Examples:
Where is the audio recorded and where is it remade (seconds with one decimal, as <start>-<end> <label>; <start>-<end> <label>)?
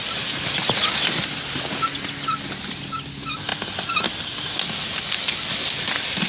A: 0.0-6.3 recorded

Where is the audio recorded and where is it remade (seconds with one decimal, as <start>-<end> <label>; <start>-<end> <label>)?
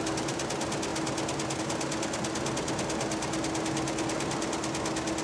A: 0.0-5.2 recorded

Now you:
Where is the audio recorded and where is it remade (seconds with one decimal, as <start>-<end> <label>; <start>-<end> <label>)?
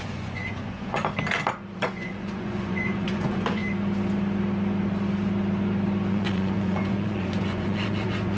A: 0.0-1.0 remade; 1.0-1.8 recorded; 1.8-3.6 remade; 3.6-6.1 recorded; 6.1-8.4 remade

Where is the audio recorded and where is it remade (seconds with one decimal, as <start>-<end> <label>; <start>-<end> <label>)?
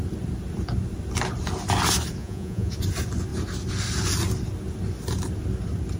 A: 0.0-2.2 recorded; 2.2-2.7 remade; 2.7-6.0 recorded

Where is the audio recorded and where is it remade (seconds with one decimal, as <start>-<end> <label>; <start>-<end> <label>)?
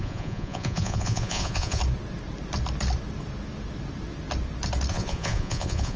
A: 0.0-1.8 remade; 1.8-4.9 recorded; 4.9-6.0 remade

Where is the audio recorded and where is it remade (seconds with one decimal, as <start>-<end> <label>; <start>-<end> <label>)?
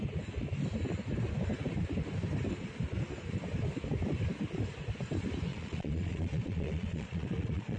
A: 0.0-5.5 recorded; 5.5-7.8 remade